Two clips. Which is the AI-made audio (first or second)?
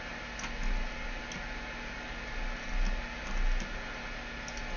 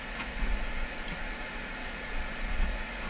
second